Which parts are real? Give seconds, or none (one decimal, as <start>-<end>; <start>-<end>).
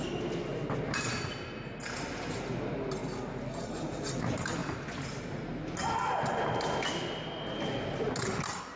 0.0-3.0; 3.5-8.8